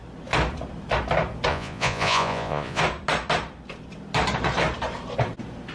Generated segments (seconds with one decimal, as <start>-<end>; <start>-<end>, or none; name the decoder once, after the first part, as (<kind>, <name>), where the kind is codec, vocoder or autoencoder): 1.5-2.8 (vocoder, Vocos)